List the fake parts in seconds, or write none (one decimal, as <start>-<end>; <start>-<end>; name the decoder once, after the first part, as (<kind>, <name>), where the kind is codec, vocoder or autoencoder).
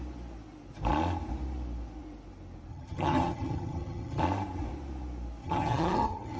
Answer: 2.7-4.2 (vocoder, HiFi-GAN); 5.4-6.4